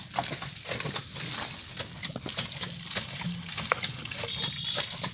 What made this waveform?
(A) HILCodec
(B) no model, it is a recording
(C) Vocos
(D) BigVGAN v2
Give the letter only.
B